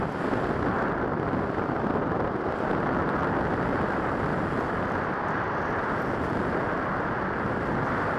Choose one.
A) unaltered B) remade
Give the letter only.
A